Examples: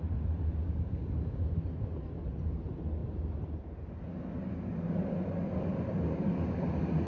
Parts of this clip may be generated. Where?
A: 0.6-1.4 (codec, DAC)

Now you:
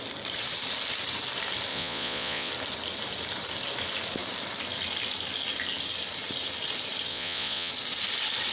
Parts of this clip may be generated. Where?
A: 1.7-2.5 (vocoder, Vocos); 7.1-7.7

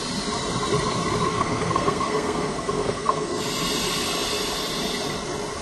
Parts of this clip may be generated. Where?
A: 1.3-3.4 (codec, SNAC)

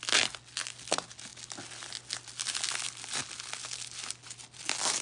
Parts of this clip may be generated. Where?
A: none

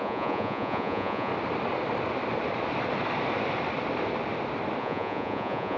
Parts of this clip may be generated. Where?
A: 0.0-1.3 (vocoder, Vocos); 4.8-5.8

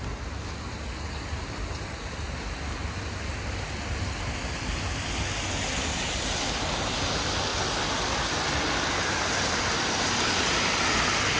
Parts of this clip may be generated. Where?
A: none